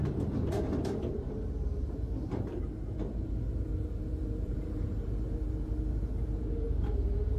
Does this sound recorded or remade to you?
remade